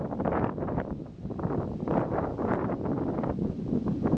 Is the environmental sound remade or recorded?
recorded